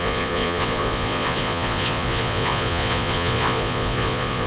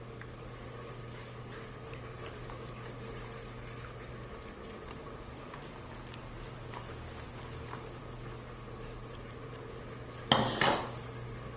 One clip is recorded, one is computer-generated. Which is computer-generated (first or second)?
first